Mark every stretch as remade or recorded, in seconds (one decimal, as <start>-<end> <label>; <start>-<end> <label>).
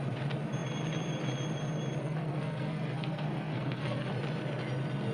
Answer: 0.0-2.0 recorded; 2.0-4.1 remade; 4.1-5.1 recorded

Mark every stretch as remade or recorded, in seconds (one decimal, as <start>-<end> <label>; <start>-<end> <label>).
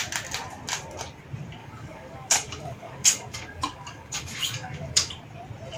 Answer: 0.0-1.6 recorded; 1.6-5.1 remade; 5.1-5.8 recorded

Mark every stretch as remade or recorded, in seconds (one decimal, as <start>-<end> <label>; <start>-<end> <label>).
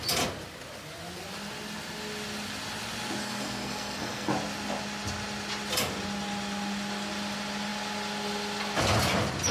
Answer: 0.0-3.2 recorded; 3.2-4.3 remade; 4.3-9.5 recorded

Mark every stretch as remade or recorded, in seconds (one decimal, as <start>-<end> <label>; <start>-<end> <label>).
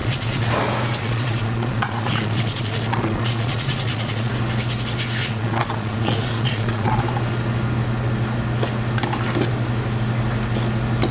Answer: 0.0-0.5 remade; 0.5-1.0 recorded; 1.0-4.3 remade; 4.3-5.2 recorded; 5.2-7.0 remade; 7.0-11.1 recorded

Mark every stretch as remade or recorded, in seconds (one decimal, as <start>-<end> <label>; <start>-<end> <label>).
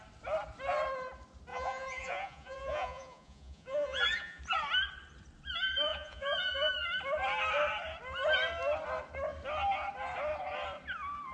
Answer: 0.0-1.5 recorded; 1.5-4.4 remade; 4.4-5.9 recorded; 5.9-6.7 remade; 6.7-11.3 recorded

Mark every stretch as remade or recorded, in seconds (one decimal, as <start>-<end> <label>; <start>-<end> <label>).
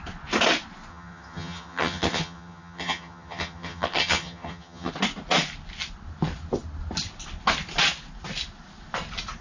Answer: 0.0-0.9 recorded; 0.9-4.9 remade; 4.9-9.4 recorded